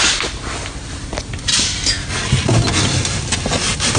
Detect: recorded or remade recorded